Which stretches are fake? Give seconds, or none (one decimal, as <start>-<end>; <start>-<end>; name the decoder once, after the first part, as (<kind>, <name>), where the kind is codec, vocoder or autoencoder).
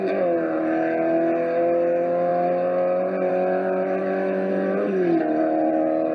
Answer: 4.0-4.5 (autoencoder, DAC-VAE)